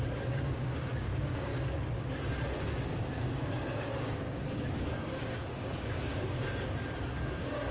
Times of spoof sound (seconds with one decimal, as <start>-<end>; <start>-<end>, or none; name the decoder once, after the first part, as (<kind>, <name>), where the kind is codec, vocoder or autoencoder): 0.0-1.5 (codec, DAC); 2.6-7.7